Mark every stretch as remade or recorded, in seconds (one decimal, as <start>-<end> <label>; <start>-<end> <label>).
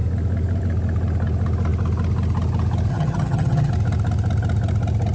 0.0-2.9 recorded; 2.9-3.7 remade; 3.7-5.1 recorded